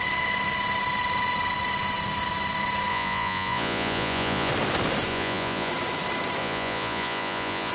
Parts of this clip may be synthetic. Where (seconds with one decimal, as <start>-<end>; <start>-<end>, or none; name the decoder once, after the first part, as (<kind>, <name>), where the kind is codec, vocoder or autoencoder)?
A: 2.9-4.5 (vocoder, Vocos); 5.1-5.7; 6.4-7.7